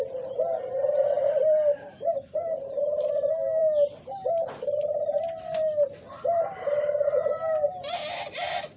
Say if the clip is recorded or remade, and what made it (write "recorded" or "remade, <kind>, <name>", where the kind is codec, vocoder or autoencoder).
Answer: remade, vocoder, BigVGAN v2